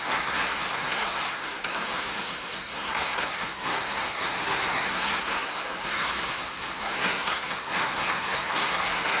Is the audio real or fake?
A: fake